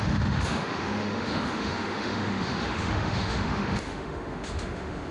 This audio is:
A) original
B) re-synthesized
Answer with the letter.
B